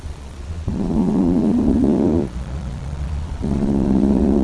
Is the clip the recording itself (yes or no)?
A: no